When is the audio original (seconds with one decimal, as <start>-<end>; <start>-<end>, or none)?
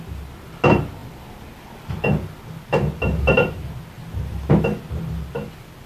0.0-5.9